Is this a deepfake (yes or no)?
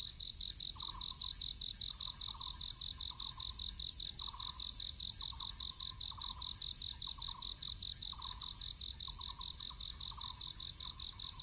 no